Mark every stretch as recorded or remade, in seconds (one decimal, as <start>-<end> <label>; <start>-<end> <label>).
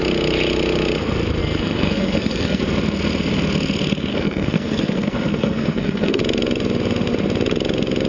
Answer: 0.0-1.4 recorded; 1.4-2.6 remade; 2.6-4.1 recorded; 4.1-6.2 remade; 6.2-8.1 recorded